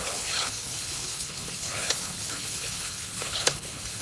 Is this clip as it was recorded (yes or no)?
no